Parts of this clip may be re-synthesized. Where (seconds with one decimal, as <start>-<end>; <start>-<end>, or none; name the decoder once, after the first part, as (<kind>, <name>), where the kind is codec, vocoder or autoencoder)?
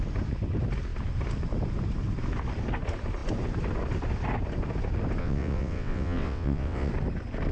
5.2-6.9 (vocoder, WaveNeXt)